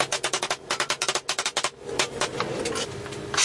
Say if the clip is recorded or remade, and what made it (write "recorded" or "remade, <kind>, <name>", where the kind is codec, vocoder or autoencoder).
recorded